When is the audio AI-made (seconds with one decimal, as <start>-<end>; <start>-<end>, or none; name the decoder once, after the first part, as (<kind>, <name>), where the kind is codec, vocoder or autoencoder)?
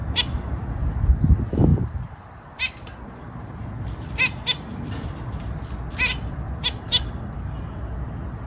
0.0-1.1 (vocoder, BigVGAN v2); 1.7-6.8